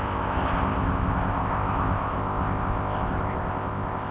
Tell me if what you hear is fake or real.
fake